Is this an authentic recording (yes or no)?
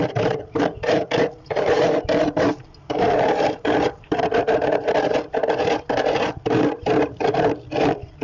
no